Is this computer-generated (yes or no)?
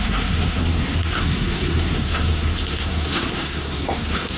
yes